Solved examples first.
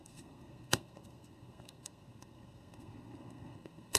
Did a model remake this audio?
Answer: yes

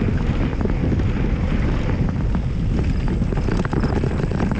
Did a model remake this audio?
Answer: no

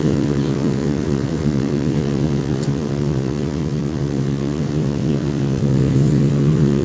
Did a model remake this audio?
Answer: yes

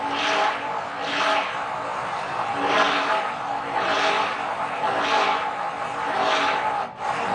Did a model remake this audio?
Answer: no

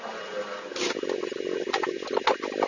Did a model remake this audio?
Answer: no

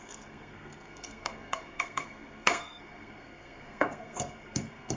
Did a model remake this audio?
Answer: yes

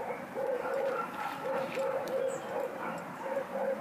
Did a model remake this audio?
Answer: no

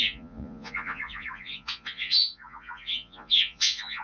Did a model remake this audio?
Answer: yes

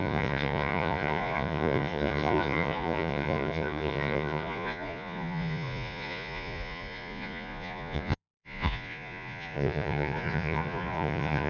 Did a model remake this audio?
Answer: yes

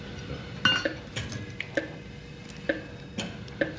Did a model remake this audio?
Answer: no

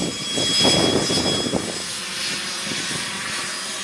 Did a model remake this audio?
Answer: no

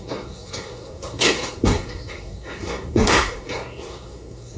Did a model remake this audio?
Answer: yes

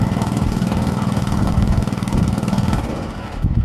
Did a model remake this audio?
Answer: yes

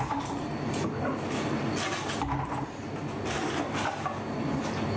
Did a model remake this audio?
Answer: no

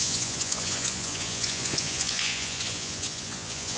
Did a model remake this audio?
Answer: yes